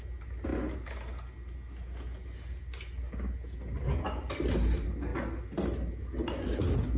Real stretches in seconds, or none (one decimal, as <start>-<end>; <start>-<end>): 0.0-7.0

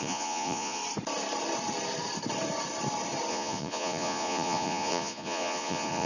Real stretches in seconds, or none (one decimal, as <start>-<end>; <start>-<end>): 0.8-3.3

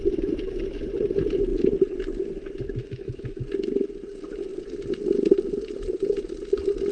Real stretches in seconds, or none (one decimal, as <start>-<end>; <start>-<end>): 0.0-2.8; 3.4-6.9

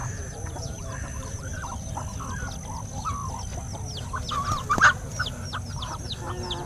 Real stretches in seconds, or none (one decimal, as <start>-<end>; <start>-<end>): 1.9-6.7

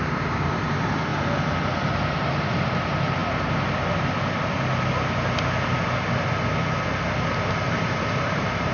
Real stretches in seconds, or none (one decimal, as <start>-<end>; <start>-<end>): 3.2-7.7

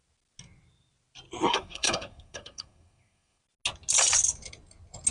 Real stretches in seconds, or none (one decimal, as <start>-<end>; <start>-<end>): 0.0-1.4; 3.4-5.1

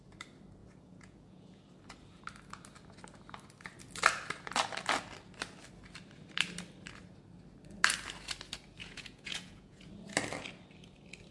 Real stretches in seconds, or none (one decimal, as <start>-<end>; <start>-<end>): 0.0-0.6; 1.6-8.8; 9.9-11.3